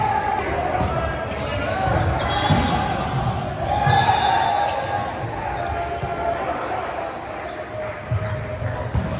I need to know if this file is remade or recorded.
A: recorded